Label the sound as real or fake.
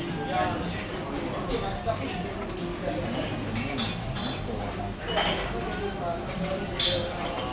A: real